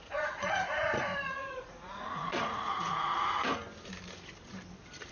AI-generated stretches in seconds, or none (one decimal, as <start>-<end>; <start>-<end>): 0.0-3.6